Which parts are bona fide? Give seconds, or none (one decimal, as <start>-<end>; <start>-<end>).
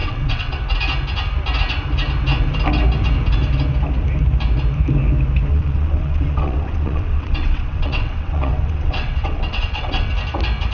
0.6-5.5; 10.1-10.7